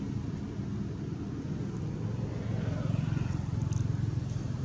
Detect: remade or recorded recorded